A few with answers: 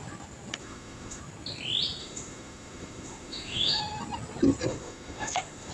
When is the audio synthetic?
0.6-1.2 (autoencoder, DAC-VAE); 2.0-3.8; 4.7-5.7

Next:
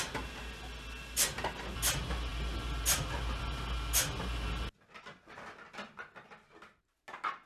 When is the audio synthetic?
none

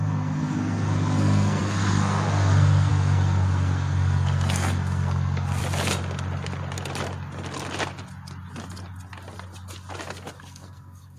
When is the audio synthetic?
0.0-5.6 (codec, SNAC); 10.4-11.2

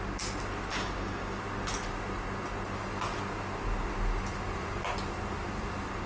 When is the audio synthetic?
0.7-1.4 (codec, DAC)

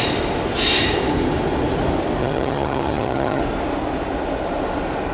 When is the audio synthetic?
2.2-3.4 (vocoder, HiFi-GAN)

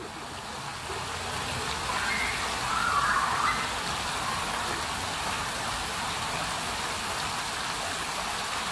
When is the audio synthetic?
none

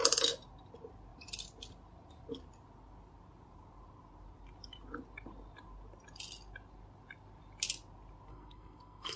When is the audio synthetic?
8.3-9.2 (codec, SNAC)